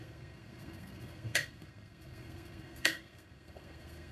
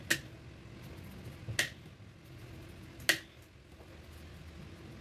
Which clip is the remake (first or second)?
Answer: first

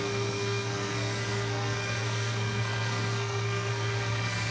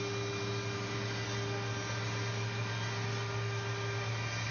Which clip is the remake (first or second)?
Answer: first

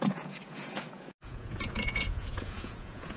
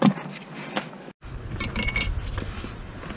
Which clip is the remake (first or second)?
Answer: first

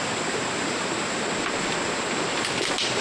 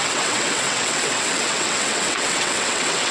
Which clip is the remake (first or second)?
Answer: second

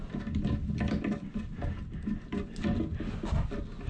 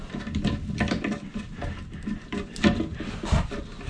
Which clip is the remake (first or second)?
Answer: second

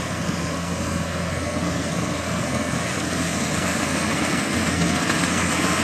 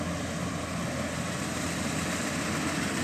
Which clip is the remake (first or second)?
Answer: first